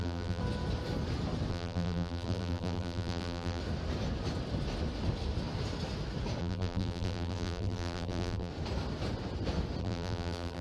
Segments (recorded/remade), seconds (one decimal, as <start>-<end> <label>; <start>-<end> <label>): 0.0-0.4 remade; 0.4-1.5 recorded; 1.5-3.6 remade; 3.6-6.4 recorded; 6.4-8.5 remade; 8.5-9.8 recorded; 9.8-10.6 remade